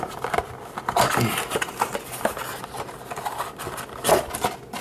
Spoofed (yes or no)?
no